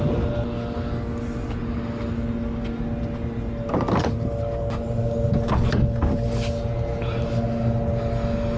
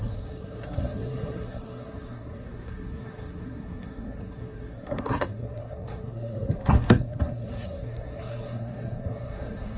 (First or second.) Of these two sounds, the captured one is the first